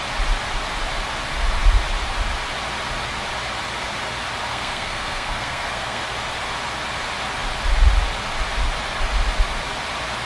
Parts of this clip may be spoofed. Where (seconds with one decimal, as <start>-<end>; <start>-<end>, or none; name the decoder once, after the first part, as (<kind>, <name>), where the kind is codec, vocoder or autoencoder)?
4.5-6.0 (codec, SNAC)